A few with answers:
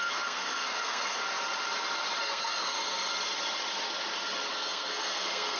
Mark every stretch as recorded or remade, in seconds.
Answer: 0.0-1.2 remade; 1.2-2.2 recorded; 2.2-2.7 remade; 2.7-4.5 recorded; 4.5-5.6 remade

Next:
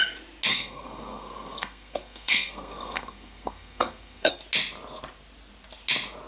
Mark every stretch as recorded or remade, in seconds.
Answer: 0.0-0.5 recorded; 0.5-4.3 remade; 4.3-6.3 recorded

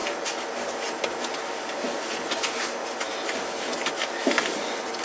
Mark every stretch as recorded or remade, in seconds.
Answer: 0.0-5.0 recorded

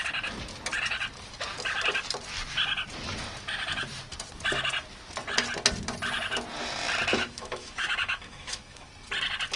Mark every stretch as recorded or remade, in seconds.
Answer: 0.0-7.1 recorded; 7.1-8.9 remade; 8.9-9.6 recorded

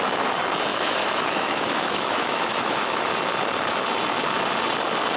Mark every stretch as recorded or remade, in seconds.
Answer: 0.0-0.7 recorded; 0.7-3.1 remade; 3.1-5.2 recorded

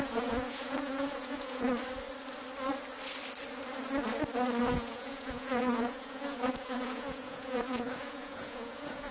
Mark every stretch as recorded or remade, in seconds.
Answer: 0.0-1.7 remade; 1.7-4.6 recorded; 4.6-9.1 remade

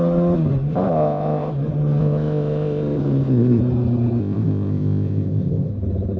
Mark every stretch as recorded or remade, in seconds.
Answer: 0.0-0.7 recorded; 0.7-1.5 remade; 1.5-2.0 recorded; 2.0-3.6 remade; 3.6-4.2 recorded; 4.2-5.7 remade; 5.7-6.2 recorded

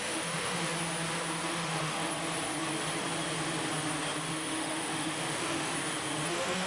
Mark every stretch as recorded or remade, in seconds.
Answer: 0.0-0.7 remade; 0.7-1.5 recorded; 1.5-2.1 remade; 2.1-4.3 recorded; 4.3-5.7 remade; 5.7-6.3 recorded; 6.3-6.7 remade